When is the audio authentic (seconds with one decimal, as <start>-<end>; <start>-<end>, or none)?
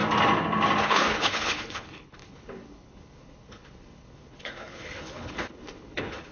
0.0-0.8